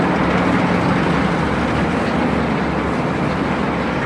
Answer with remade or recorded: recorded